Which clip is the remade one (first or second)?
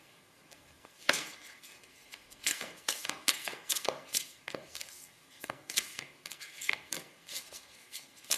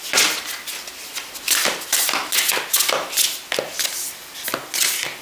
first